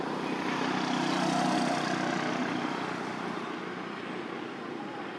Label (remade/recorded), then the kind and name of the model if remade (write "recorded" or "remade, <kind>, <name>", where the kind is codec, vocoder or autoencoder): recorded